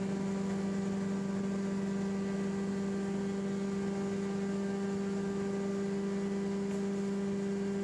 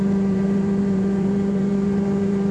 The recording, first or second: first